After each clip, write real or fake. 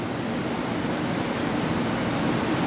real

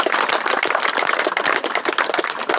real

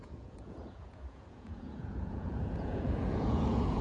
fake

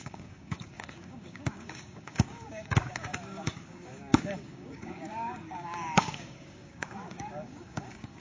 fake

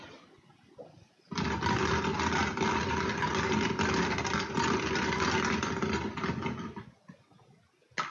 real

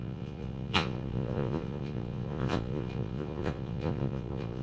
fake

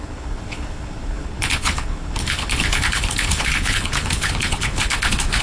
fake